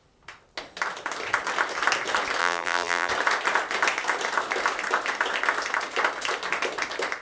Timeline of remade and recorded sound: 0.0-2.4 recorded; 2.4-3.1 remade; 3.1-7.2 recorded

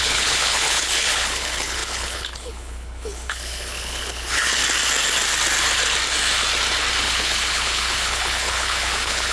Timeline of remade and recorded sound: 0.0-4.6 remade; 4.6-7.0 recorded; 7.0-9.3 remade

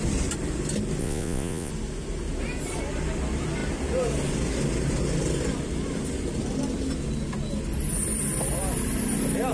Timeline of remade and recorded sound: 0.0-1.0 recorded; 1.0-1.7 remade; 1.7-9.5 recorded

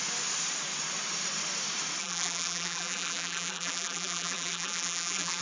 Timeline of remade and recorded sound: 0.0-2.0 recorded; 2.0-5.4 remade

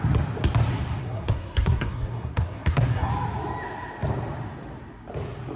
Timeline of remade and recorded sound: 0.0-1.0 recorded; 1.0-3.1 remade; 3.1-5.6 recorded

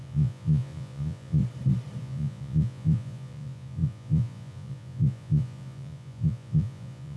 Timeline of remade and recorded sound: 0.0-1.4 remade; 1.4-2.0 recorded; 2.0-7.2 remade

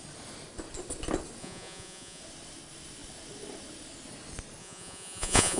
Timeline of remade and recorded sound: 0.0-1.4 recorded; 1.4-2.2 remade; 2.2-4.6 recorded; 4.6-5.6 remade